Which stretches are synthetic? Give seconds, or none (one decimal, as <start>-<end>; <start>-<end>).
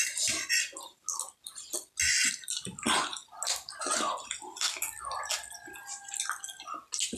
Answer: none